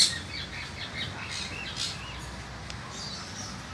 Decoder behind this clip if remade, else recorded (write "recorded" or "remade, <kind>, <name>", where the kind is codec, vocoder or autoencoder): recorded